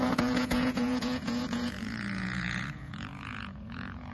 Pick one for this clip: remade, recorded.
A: remade